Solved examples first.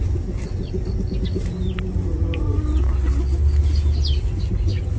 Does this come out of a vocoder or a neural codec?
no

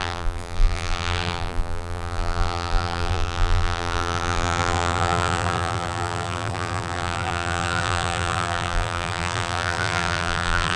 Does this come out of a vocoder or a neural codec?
yes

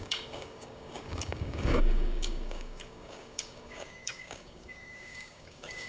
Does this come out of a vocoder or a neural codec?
yes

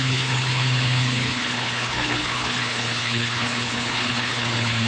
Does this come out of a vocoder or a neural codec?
yes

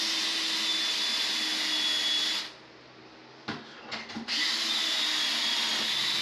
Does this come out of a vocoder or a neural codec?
no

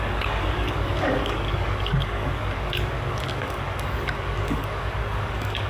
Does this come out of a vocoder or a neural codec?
yes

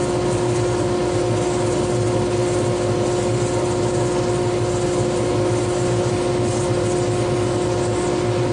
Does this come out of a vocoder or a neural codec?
no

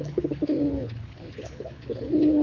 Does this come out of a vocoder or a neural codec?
yes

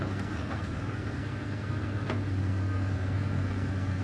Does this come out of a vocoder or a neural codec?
yes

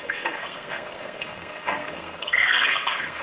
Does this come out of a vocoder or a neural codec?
yes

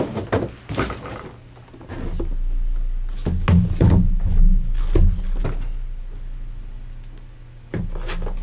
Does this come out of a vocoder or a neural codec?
no